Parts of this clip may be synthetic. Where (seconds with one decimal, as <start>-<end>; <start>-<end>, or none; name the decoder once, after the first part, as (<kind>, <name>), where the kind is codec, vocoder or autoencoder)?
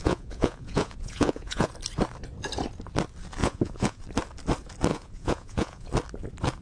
0.0-1.7 (vocoder, Vocos); 3.4-4.0; 4.9-5.9